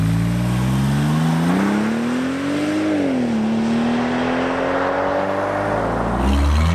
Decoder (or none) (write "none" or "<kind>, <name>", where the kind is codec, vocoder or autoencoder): none